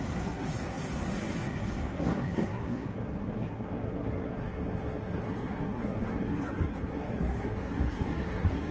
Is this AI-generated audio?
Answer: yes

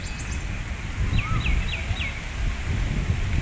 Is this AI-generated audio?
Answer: no